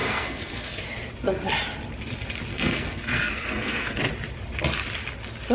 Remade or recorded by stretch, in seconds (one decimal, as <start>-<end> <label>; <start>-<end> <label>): 0.0-0.8 remade; 0.8-2.5 recorded; 2.5-4.0 remade; 4.0-5.5 recorded